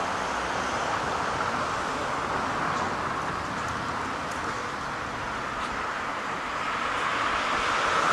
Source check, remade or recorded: recorded